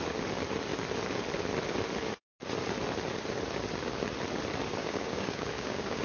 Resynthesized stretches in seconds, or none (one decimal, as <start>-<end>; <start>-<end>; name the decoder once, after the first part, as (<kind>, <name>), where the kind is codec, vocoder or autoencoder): 4.8-6.0 (codec, DAC)